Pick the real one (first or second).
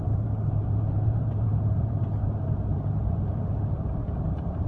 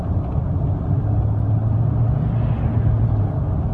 second